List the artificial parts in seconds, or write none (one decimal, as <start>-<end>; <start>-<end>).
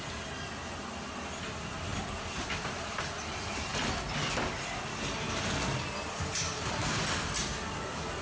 1.9-2.6